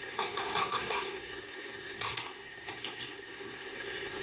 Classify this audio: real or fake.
fake